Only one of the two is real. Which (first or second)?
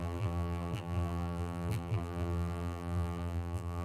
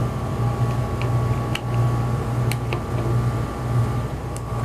second